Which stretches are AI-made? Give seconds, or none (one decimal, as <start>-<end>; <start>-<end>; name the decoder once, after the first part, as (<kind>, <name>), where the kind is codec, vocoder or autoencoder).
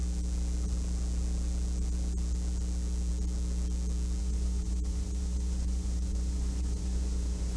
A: 4.2-7.6 (vocoder, Vocos)